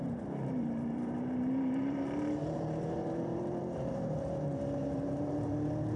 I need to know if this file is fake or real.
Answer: fake